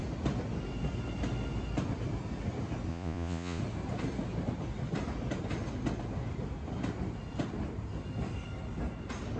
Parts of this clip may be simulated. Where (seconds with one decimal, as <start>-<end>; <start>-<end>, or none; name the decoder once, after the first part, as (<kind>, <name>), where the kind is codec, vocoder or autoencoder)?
2.9-3.6 (vocoder, Vocos)

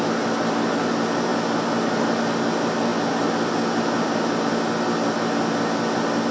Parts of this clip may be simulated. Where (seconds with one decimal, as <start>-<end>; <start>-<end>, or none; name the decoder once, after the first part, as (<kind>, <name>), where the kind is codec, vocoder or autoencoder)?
none

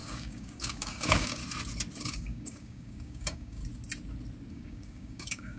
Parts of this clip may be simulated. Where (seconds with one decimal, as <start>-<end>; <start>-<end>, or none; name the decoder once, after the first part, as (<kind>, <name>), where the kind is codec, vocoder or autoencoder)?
0.0-1.4 (codec, DAC); 2.0-3.6; 4.5-5.6